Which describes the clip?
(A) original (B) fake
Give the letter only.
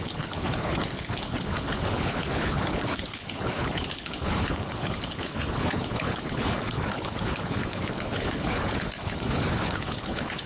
B